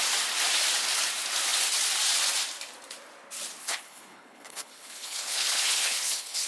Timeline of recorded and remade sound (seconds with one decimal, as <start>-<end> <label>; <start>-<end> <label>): 0.0-3.6 recorded; 3.6-6.5 remade